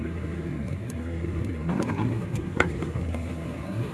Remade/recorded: remade